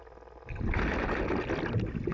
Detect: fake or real real